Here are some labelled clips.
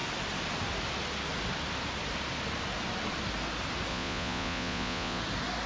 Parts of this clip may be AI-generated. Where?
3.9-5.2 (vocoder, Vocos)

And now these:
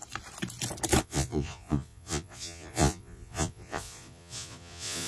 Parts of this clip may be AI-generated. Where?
1.0-5.1 (vocoder, Vocos)

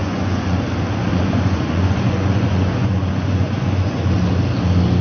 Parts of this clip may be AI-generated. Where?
0.0-0.6 (vocoder, Vocos); 1.1-4.1

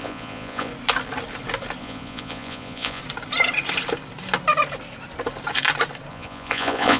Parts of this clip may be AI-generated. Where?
0.0-0.7 (vocoder, Vocos); 1.8-3.0; 6.1-7.0

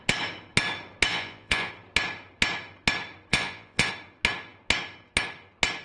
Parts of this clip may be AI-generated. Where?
1.1-1.7 (vocoder, Vocos); 3.3-3.9

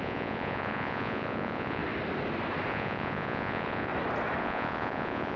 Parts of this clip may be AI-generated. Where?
0.0-1.8 (vocoder, Vocos); 2.7-3.9; 4.4-5.4

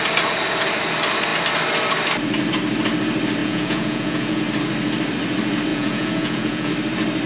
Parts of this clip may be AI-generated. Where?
3.4-4.4 (vocoder, Vocos); 5.7-6.7

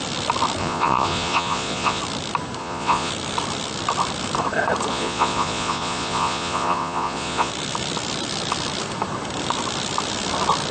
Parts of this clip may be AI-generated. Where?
0.6-2.0 (vocoder, Vocos); 2.6-3.1; 4.9-7.5